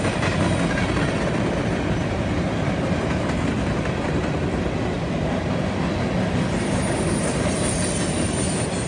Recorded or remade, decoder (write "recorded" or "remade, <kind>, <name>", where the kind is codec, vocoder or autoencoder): recorded